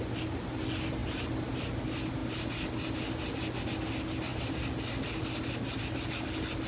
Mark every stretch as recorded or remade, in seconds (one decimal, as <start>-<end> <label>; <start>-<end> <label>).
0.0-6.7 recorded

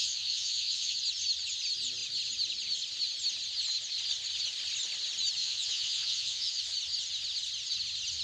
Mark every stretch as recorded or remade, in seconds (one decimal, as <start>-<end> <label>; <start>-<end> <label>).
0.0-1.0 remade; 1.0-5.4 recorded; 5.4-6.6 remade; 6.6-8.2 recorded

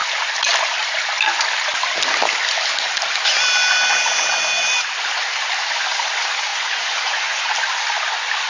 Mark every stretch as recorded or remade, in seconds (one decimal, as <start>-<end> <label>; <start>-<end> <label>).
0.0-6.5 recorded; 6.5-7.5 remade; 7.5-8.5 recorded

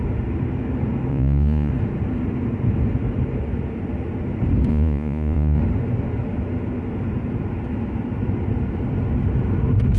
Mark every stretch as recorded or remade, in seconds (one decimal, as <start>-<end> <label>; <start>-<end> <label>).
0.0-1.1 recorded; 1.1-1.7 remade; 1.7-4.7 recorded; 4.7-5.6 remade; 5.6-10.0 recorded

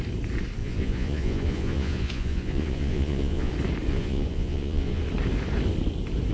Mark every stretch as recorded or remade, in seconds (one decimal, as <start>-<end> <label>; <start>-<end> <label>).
0.0-0.6 recorded; 0.6-3.5 remade; 3.5-3.9 recorded; 3.9-5.0 remade; 5.0-6.3 recorded